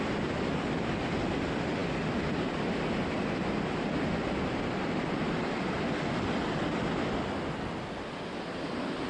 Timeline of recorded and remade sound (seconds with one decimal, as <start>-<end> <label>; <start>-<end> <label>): 0.0-9.1 recorded